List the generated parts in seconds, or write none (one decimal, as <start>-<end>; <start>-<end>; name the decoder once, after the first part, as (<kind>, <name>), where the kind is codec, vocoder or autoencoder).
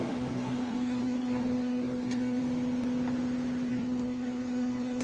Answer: 0.0-2.4 (codec, SNAC); 3.7-5.0